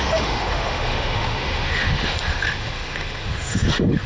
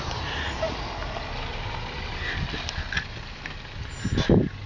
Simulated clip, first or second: first